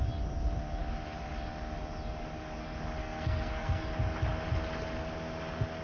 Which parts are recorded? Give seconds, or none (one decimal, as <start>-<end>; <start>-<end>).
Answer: 0.0-3.0; 3.9-5.8